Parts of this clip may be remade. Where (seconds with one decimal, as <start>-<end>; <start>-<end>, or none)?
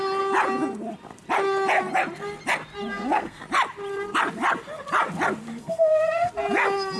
2.9-3.4; 5.6-6.3